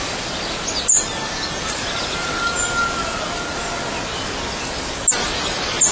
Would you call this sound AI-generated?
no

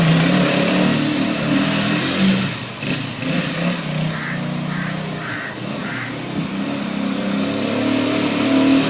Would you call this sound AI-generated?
no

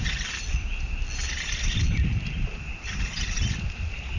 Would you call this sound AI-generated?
no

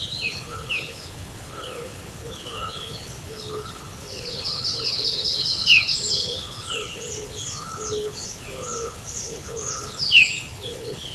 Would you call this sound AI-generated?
yes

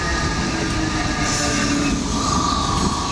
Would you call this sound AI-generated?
no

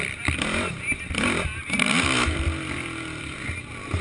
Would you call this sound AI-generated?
no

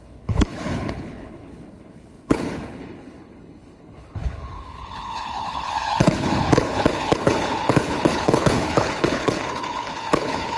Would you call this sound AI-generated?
yes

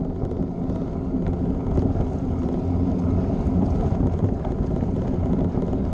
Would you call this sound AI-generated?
no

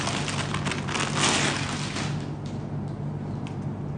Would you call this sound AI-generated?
no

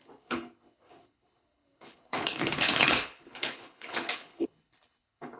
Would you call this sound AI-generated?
yes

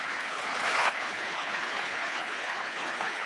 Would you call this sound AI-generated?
yes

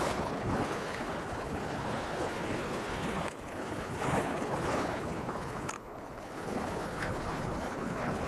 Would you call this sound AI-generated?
yes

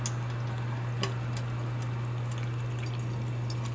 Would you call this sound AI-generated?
no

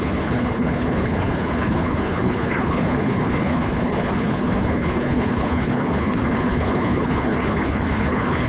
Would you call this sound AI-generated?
yes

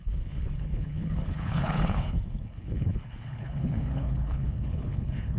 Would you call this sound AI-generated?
yes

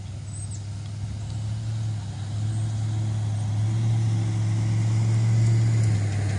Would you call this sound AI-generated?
no